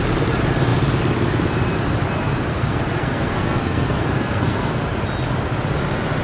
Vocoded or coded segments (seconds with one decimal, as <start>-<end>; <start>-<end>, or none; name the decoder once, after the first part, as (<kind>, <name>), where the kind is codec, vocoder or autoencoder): 2.5-4.8 (codec, SNAC)

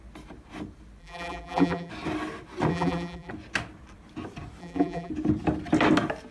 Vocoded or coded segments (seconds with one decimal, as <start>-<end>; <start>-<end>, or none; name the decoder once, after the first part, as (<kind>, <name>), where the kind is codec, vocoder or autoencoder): 1.0-1.9 (vocoder, BigVGAN v2); 2.7-3.3; 4.6-5.1

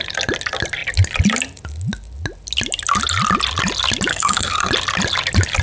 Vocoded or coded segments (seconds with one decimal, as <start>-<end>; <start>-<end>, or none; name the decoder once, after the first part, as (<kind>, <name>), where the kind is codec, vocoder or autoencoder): 4.1-4.7 (codec, SNAC)

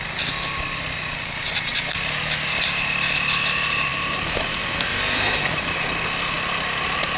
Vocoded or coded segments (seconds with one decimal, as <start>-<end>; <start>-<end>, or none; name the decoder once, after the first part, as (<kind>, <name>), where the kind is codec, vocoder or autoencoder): none

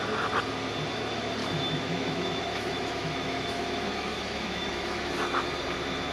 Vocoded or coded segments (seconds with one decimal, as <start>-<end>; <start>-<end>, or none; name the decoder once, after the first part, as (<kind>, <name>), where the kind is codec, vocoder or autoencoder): 1.4-5.1 (autoencoder, DAC-VAE)

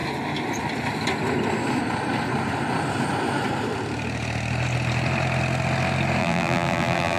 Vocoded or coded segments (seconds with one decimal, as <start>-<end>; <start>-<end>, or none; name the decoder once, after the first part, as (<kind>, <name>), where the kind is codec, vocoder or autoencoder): 6.2-7.2 (vocoder, BigVGAN v2)